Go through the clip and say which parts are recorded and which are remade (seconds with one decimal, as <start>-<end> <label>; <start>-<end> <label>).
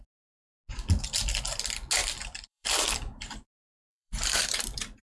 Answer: 0.0-2.0 recorded; 2.0-5.0 remade